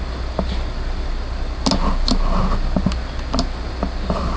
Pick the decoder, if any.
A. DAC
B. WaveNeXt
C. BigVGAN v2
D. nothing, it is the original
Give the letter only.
D